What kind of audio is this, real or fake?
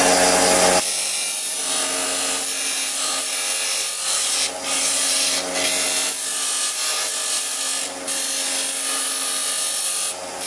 real